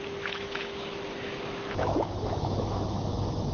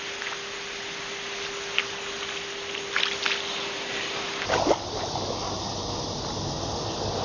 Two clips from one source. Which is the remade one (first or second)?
first